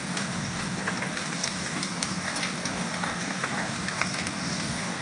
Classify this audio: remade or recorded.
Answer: remade